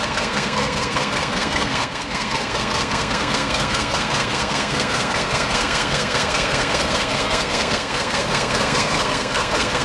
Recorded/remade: remade